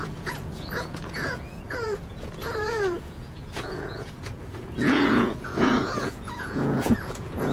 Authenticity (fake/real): fake